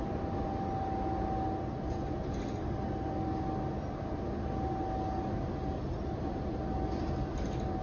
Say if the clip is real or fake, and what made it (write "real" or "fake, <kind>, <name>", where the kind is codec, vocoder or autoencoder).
real